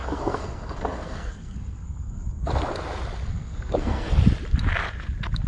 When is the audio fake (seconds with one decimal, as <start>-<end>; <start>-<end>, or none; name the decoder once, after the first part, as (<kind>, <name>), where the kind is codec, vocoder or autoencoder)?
0.0-2.5 (codec, SNAC); 3.3-4.1